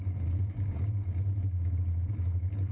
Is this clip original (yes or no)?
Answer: no